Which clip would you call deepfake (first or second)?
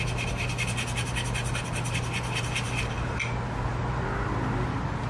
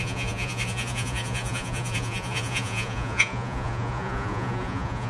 second